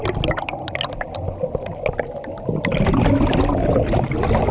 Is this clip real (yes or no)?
yes